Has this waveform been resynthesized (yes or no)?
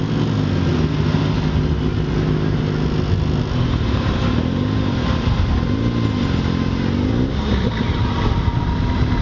no